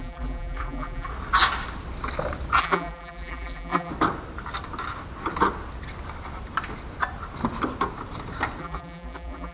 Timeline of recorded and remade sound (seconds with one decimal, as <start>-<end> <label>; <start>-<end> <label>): 0.0-1.1 remade; 1.1-2.6 recorded; 2.6-3.9 remade; 3.9-8.6 recorded; 8.6-9.5 remade